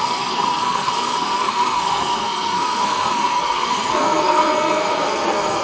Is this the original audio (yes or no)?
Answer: no